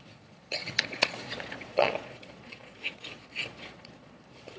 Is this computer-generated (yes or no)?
yes